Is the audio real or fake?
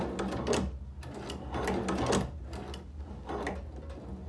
real